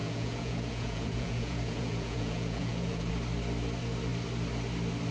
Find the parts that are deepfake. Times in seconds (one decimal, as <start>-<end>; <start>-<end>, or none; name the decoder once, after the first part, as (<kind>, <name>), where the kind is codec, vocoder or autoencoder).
0.0-3.1 (vocoder, Vocos)

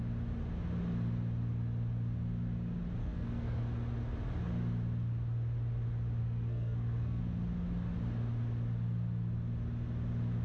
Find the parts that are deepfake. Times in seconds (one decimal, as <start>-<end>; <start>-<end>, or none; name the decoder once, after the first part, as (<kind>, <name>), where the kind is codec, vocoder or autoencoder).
3.0-3.6 (codec, SNAC); 6.2-7.2

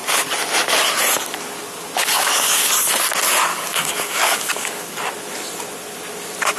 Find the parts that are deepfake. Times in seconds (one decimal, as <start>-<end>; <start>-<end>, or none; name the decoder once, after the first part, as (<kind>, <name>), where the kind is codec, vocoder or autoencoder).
2.0-2.7 (codec, DAC); 3.5-5.0